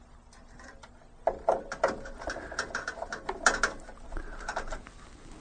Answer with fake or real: real